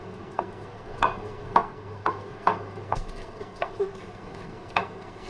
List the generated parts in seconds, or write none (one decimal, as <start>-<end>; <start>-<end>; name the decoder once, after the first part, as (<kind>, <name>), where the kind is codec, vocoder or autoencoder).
0.0-5.3 (codec, SNAC)